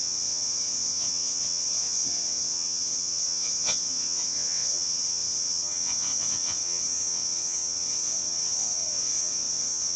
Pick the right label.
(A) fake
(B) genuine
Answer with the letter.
A